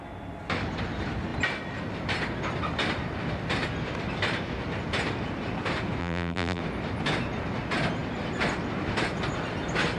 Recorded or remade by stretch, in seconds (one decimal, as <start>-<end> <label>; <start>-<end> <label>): 0.0-6.0 recorded; 6.0-6.6 remade; 6.6-10.0 recorded